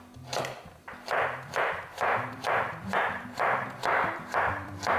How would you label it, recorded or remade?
remade